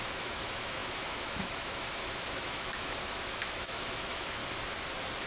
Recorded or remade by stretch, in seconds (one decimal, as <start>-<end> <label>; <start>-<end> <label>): 0.0-4.4 remade; 4.4-5.3 recorded